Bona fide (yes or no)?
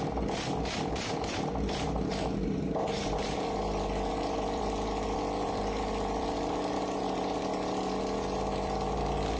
yes